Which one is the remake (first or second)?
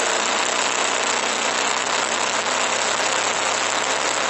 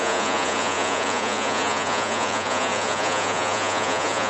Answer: second